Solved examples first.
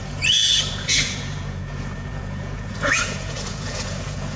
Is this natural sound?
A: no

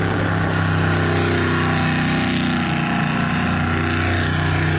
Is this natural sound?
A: yes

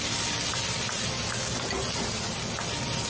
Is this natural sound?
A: yes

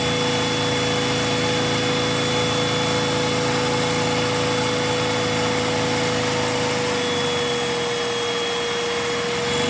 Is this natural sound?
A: yes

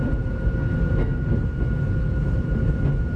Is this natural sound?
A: yes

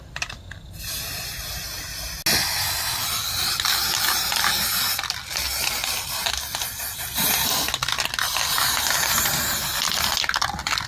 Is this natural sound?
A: yes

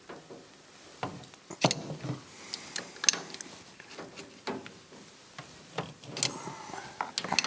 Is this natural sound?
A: yes